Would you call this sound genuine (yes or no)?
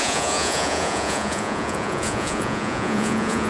no